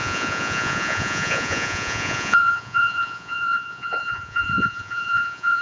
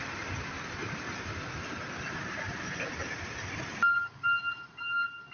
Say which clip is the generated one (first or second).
first